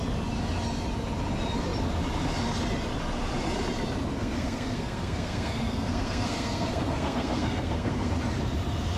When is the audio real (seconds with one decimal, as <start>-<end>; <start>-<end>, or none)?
0.0-4.2; 8.1-9.0

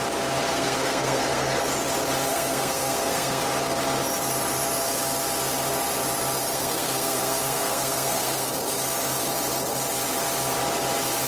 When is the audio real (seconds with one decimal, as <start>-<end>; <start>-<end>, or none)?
0.0-0.5; 1.6-2.3; 3.4-6.4; 8.5-11.3

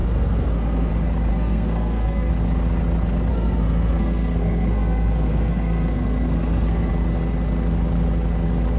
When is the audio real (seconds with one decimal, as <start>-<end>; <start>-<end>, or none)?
0.9-1.3; 2.3-3.3; 6.9-8.8